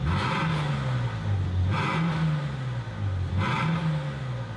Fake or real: real